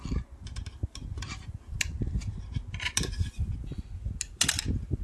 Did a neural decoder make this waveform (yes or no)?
no